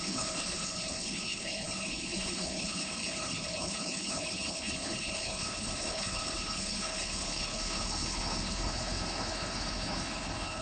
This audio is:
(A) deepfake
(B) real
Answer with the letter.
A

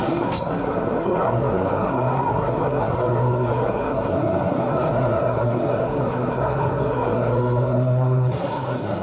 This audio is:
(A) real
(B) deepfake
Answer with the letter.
B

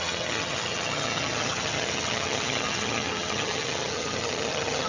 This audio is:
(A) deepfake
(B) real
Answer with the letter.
A